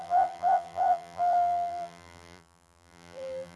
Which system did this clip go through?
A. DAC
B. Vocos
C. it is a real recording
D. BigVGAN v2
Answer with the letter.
D